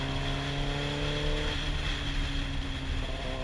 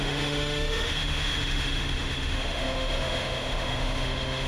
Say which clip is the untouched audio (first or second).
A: first